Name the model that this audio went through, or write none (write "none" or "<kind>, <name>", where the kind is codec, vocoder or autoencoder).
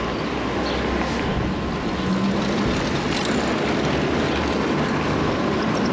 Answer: none